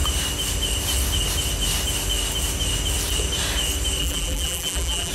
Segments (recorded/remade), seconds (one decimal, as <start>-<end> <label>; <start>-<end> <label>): 0.0-4.0 recorded; 4.0-5.1 remade

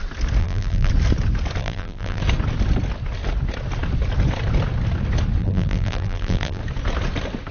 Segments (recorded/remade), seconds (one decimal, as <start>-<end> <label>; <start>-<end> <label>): 0.0-0.4 recorded; 0.4-0.9 remade; 0.9-1.6 recorded; 1.6-2.2 remade; 2.2-5.4 recorded; 5.4-6.6 remade; 6.6-7.5 recorded